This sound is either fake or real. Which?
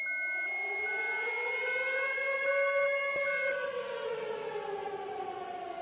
real